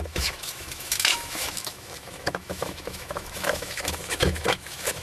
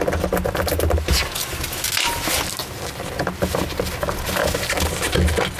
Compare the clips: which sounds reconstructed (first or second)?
first